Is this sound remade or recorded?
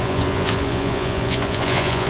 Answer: remade